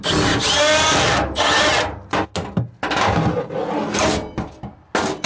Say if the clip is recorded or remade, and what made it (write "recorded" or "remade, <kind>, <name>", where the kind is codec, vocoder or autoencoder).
recorded